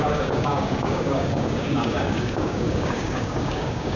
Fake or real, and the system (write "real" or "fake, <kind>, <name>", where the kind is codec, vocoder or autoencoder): fake, codec, DAC